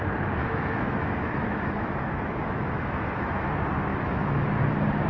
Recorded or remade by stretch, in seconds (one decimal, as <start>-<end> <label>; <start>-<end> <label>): 0.0-0.4 recorded; 0.4-3.5 remade; 3.5-3.9 recorded; 3.9-4.6 remade; 4.6-5.1 recorded